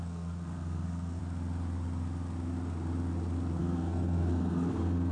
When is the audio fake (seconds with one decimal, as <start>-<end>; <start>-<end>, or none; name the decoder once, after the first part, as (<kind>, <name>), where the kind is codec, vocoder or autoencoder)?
0.0-1.2 (codec, SNAC); 3.6-5.1